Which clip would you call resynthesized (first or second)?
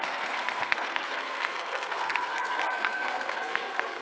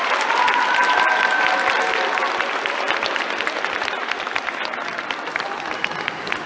first